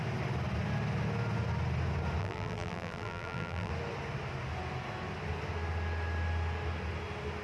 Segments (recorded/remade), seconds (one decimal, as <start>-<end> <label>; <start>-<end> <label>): 0.0-2.2 recorded; 2.2-3.7 remade; 3.7-7.4 recorded